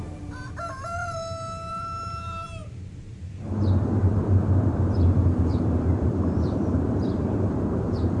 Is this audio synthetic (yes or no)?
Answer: yes